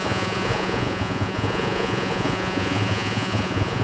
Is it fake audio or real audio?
fake